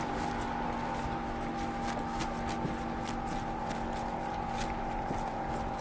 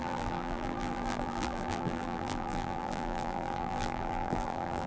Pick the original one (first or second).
first